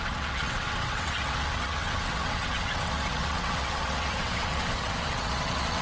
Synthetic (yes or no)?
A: yes